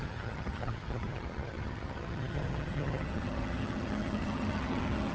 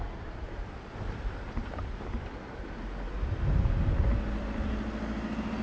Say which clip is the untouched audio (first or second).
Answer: second